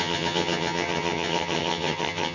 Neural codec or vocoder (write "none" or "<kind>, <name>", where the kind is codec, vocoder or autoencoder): vocoder, HiFi-GAN